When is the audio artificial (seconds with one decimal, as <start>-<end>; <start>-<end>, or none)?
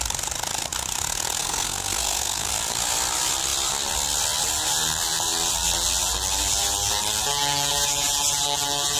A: 1.4-2.5